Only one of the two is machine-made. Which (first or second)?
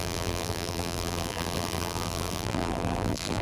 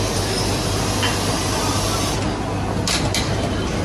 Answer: first